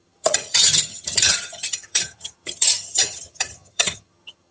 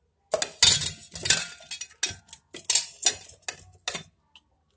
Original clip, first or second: second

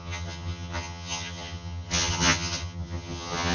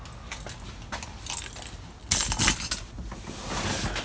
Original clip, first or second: second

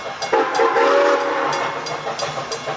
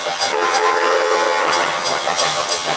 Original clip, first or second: first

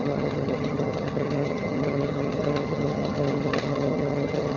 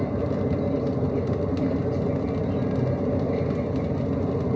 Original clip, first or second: second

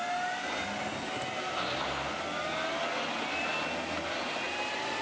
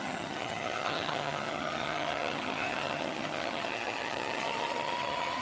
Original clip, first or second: first